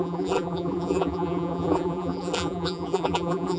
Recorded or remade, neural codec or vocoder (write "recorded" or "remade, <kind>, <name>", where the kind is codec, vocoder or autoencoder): remade, vocoder, BigVGAN v2